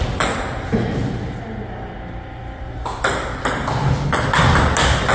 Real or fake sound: real